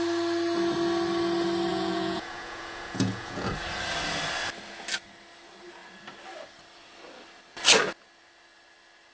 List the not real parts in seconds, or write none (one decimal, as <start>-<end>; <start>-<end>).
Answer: 1.7-3.5